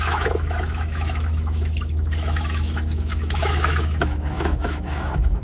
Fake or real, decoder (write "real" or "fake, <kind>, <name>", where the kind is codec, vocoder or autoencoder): fake, autoencoder, DAC-VAE